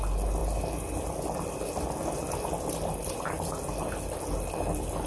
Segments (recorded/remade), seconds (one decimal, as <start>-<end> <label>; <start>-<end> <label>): 0.0-5.1 recorded